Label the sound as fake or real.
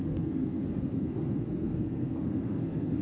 fake